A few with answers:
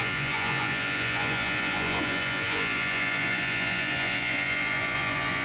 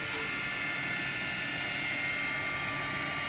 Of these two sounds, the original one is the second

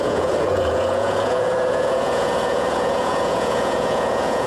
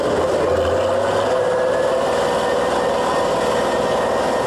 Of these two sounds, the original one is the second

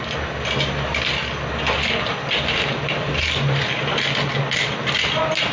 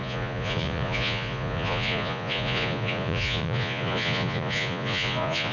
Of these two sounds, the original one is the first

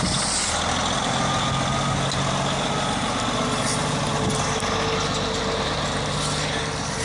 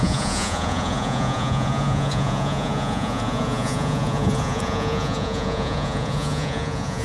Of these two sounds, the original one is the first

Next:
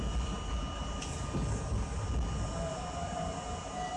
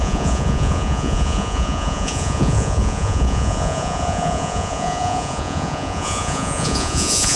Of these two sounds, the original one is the first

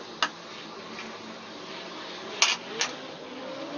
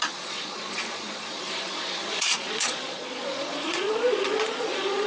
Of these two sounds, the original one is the first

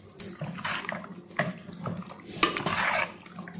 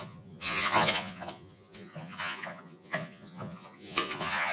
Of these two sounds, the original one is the first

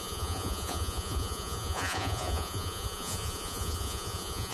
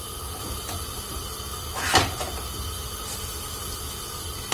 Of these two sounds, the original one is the second